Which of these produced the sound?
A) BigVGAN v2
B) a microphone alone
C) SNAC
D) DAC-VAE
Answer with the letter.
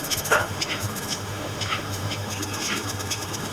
D